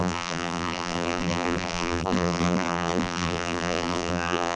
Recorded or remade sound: remade